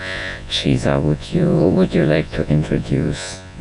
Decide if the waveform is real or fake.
fake